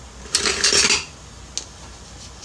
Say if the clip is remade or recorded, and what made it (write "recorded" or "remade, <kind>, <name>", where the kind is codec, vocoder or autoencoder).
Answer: recorded